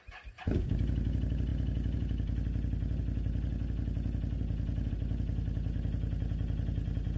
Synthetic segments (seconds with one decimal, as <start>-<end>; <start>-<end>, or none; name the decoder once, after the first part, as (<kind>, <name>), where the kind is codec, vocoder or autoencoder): none